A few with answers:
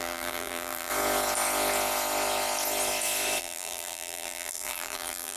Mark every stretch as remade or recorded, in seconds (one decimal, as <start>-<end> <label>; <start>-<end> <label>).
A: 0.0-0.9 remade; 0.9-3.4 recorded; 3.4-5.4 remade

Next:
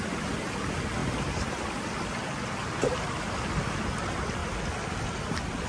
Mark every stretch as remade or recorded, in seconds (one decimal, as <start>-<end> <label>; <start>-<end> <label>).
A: 0.0-5.7 recorded

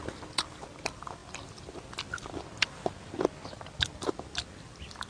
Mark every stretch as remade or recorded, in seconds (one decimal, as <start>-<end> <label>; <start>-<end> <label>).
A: 0.0-1.2 recorded; 1.2-2.0 remade; 2.0-5.1 recorded

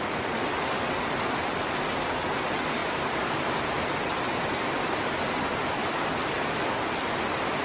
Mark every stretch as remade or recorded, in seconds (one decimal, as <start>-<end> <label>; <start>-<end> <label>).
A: 0.0-7.6 recorded

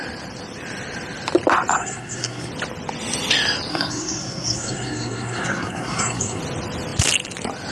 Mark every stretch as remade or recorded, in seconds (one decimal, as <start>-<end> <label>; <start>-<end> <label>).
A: 0.0-1.8 recorded; 1.8-2.5 remade; 2.5-3.7 recorded; 3.7-6.4 remade; 6.4-7.7 recorded

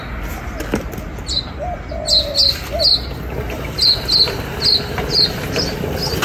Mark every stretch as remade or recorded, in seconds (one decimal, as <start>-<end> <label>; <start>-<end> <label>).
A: 0.0-6.2 recorded

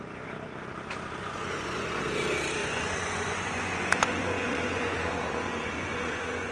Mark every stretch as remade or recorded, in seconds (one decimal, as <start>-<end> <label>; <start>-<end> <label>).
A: 0.0-1.2 recorded; 1.2-2.0 remade; 2.0-2.6 recorded; 2.6-6.5 remade

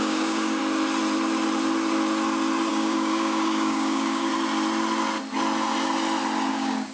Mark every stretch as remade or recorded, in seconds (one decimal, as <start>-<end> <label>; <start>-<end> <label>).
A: 0.0-0.6 remade; 0.6-2.7 recorded; 2.7-4.3 remade; 4.3-6.5 recorded; 6.5-6.9 remade